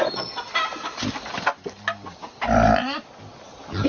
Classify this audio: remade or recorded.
recorded